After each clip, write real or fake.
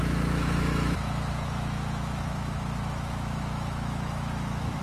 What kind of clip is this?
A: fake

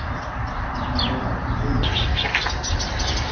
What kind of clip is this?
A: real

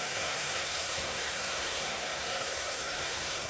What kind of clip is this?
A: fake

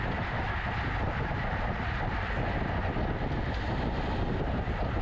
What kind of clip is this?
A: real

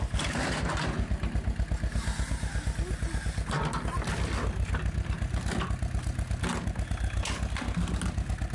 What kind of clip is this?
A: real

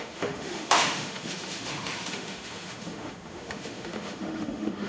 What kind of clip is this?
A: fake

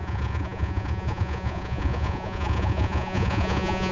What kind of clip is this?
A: fake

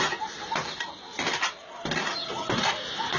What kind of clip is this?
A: real